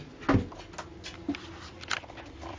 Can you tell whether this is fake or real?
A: real